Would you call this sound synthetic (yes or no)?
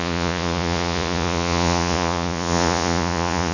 yes